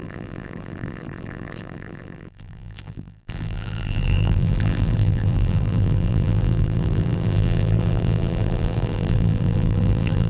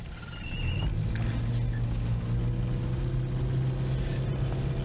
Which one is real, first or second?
second